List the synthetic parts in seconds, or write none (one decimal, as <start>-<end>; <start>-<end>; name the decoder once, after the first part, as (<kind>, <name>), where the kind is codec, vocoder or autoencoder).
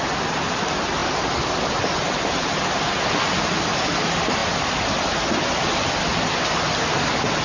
none